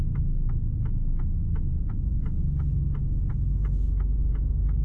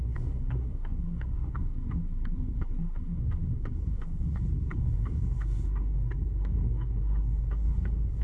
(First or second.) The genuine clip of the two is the first